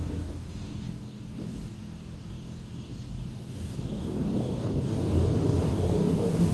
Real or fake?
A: fake